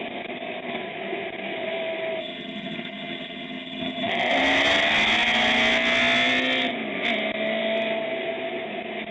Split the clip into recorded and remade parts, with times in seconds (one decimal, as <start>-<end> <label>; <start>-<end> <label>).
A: 0.0-2.2 recorded; 2.2-4.1 remade; 4.1-9.1 recorded